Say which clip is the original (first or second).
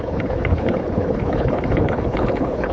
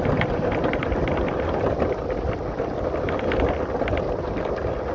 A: second